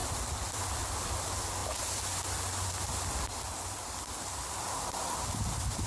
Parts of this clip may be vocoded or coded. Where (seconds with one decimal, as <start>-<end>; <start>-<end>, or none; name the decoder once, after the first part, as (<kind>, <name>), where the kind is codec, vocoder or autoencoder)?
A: 0.0-0.6 (vocoder, BigVGAN v2)